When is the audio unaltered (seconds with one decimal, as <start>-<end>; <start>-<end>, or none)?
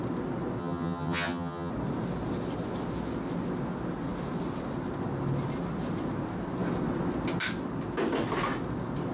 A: 0.0-0.6; 1.7-9.1